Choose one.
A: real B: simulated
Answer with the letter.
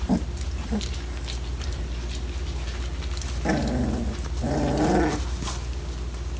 A